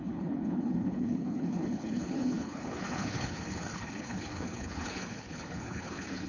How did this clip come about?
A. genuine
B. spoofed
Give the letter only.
B